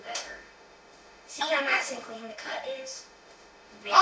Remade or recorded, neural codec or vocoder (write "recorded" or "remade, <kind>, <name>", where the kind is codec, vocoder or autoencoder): remade, autoencoder, DAC-VAE